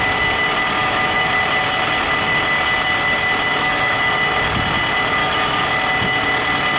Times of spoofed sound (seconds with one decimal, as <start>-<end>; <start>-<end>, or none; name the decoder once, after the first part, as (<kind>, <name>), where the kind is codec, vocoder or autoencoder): 0.8-1.3 (autoencoder, DAC-VAE); 3.5-4.1; 5.2-5.7